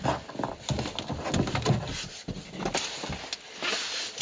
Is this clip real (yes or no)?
yes